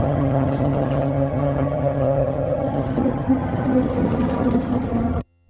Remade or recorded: remade